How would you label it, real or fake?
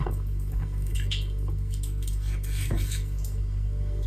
fake